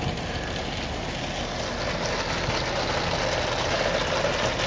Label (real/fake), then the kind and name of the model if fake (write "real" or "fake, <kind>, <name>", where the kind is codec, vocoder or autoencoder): real